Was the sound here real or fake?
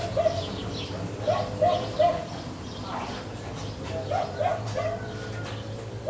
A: real